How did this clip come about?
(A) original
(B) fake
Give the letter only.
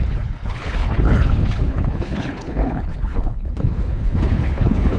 B